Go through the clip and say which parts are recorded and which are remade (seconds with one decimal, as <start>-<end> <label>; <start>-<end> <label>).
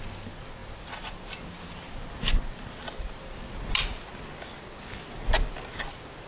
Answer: 0.0-6.3 recorded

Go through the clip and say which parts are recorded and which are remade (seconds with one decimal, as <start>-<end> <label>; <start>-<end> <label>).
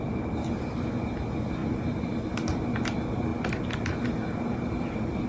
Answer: 0.0-5.3 recorded